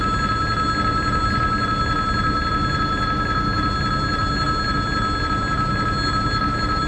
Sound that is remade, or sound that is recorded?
recorded